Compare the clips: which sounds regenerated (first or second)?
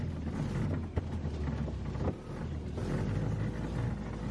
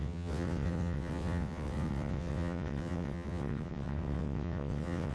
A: second